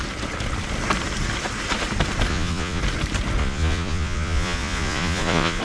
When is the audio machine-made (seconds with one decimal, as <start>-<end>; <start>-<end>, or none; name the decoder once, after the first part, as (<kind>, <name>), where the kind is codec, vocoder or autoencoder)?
2.3-2.8 (vocoder, Vocos); 3.4-5.6